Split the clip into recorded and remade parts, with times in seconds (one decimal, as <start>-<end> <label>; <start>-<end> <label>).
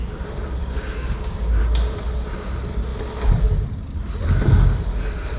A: 0.0-0.6 recorded; 0.6-1.6 remade; 1.6-5.4 recorded